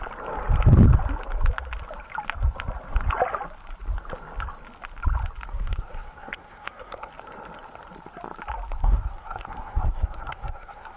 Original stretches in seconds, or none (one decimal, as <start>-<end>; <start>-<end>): 0.0-5.5; 7.1-8.8